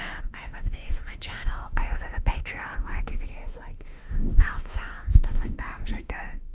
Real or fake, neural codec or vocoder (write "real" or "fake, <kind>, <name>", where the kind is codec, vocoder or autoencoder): fake, autoencoder, DAC-VAE